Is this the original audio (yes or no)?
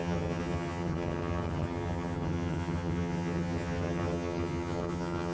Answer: no